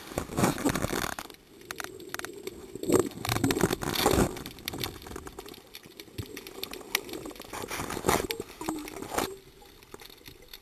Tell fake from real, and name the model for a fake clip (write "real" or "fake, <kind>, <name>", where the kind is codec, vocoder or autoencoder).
real